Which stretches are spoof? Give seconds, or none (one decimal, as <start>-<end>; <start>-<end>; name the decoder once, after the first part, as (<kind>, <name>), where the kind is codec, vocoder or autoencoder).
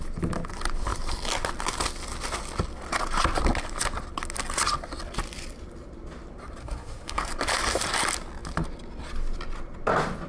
6.6-7.2 (codec, SNAC)